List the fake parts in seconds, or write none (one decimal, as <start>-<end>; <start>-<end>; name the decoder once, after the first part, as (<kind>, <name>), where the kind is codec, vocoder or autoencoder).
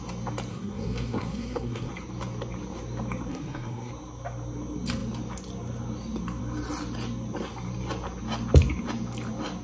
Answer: 0.5-1.9 (codec, SNAC); 3.3-3.9